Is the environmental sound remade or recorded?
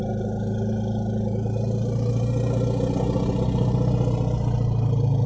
recorded